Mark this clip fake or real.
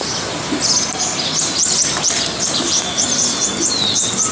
real